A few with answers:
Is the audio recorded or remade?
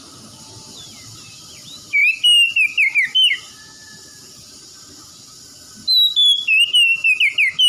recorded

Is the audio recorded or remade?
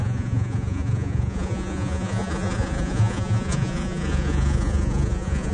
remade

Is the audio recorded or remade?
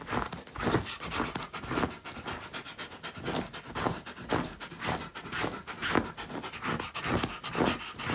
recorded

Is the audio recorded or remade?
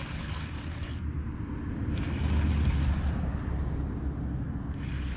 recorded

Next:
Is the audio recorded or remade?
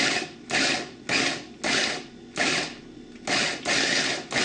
recorded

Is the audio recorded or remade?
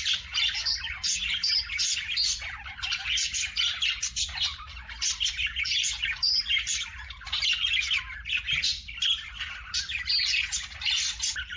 recorded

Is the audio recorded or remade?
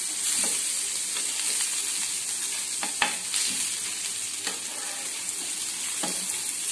recorded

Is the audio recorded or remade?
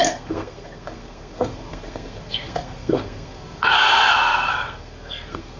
remade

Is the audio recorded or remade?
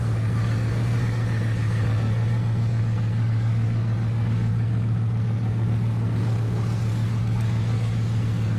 remade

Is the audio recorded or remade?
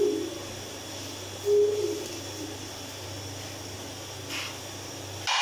recorded